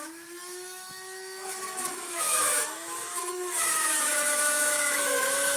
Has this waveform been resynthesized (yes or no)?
yes